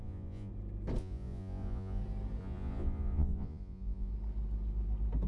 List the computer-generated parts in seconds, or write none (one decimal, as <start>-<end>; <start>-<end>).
0.0-0.5; 1.0-2.0; 2.4-4.1